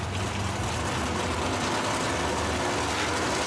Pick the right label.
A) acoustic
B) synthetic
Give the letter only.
A